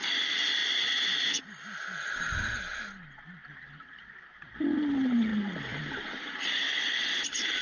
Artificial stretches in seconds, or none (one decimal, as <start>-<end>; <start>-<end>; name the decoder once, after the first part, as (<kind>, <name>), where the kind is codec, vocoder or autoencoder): none